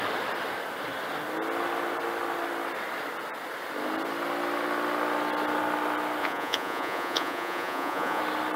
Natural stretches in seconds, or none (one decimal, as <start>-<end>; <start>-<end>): 0.0-6.2; 8.2-8.6